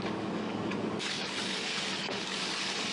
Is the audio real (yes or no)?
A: no